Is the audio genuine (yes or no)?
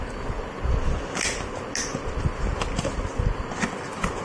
yes